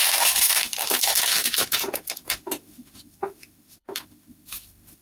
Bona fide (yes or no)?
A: no